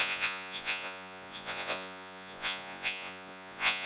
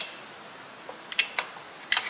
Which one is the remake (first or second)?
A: first